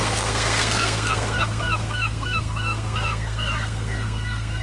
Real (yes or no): no